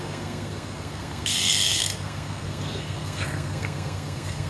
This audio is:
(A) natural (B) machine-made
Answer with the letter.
B